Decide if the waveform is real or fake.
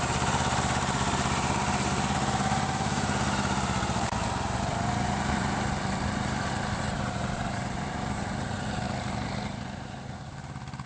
fake